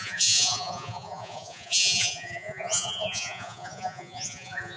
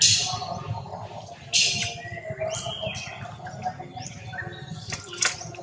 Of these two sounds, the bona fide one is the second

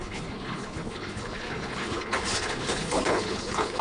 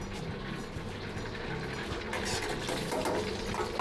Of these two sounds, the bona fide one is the second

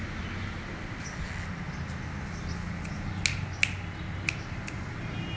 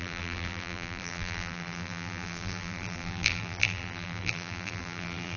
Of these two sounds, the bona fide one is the first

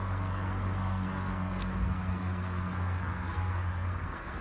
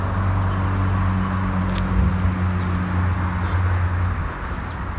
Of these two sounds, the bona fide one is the second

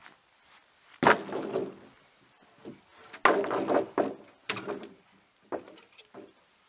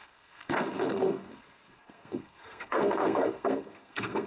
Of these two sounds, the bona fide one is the first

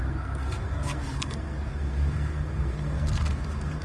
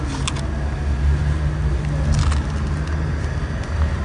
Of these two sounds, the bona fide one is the second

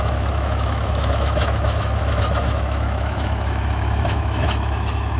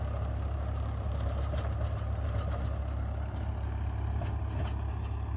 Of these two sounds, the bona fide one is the second